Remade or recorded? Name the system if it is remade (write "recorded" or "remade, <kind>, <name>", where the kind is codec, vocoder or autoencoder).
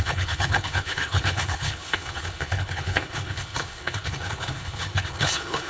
remade, codec, HILCodec